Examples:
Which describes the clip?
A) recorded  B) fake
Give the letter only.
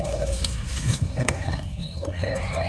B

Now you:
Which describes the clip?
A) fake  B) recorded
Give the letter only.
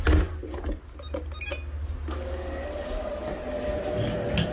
B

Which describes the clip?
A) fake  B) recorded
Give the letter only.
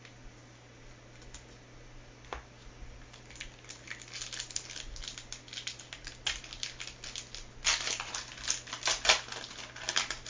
B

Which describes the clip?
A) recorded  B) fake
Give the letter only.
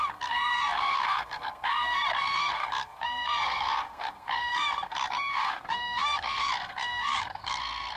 B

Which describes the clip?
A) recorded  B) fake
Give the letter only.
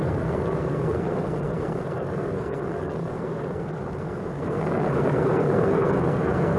B